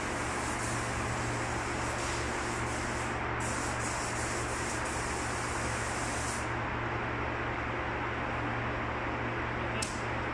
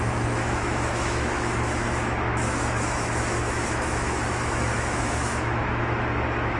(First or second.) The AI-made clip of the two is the second